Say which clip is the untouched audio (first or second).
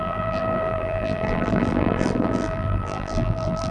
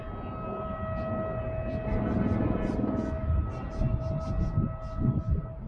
second